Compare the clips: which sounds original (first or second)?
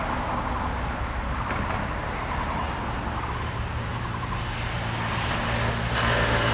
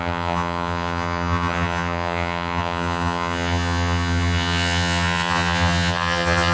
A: first